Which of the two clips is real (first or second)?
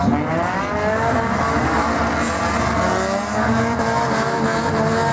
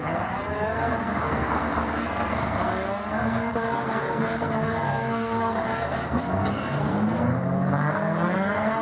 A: first